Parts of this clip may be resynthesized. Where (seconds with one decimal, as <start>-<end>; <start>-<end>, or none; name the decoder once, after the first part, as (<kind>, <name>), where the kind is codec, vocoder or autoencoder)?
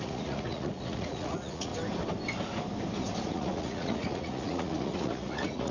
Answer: 0.0-1.7 (vocoder, Vocos); 3.2-5.7